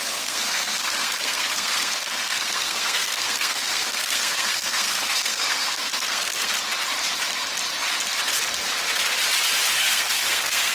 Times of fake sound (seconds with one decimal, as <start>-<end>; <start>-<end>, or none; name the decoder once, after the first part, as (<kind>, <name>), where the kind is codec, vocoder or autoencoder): 0.0-6.5 (codec, SNAC); 9.8-10.7